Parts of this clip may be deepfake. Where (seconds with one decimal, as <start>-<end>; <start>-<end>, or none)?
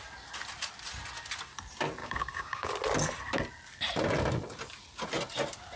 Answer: 2.0-2.7